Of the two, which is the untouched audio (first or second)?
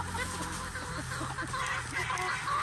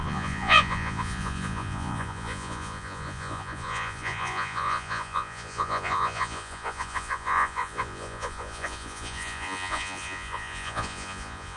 first